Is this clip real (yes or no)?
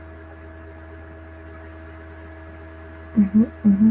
yes